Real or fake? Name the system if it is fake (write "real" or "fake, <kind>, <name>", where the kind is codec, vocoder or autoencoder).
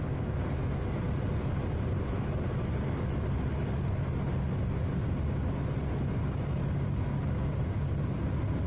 real